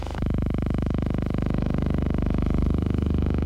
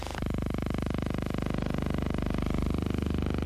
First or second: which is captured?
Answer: second